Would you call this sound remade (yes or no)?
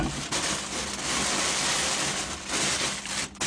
no